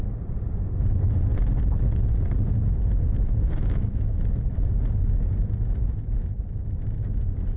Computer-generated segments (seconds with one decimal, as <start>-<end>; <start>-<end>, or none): 3.6-4.2

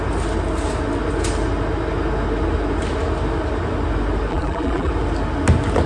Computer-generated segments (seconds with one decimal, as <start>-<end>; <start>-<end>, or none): 4.3-4.9

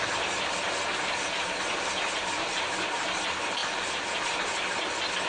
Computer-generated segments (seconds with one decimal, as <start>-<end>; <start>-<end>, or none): none

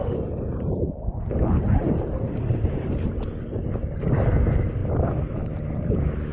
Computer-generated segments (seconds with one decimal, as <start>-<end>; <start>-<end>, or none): none

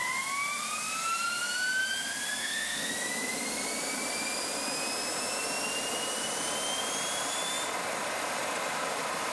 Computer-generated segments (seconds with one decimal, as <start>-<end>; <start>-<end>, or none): 2.4-2.9

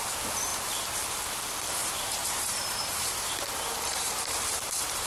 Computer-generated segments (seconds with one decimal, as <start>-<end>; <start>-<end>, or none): 1.8-5.1

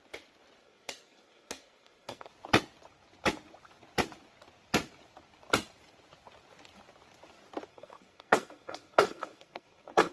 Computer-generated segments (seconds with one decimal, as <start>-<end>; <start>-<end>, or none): 0.6-2.3; 7.7-10.1

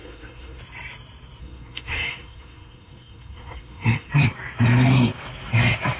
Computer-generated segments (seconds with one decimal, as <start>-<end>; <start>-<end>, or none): 0.0-0.6; 1.4-4.1